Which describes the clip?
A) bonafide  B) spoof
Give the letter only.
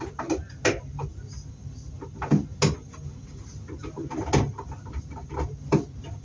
A